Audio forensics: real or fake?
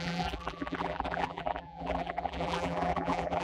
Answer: fake